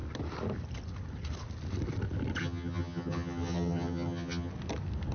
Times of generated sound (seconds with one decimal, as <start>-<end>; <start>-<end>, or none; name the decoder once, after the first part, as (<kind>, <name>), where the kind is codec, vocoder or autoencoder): 2.4-4.5 (vocoder, HiFi-GAN)